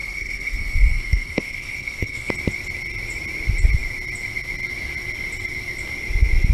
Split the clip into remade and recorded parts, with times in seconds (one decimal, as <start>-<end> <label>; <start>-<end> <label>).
0.0-2.3 remade; 2.3-6.5 recorded